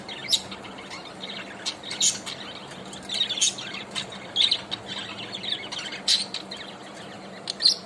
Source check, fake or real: real